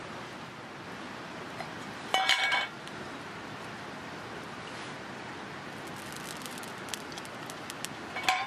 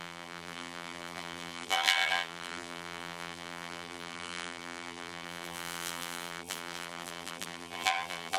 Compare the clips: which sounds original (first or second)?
first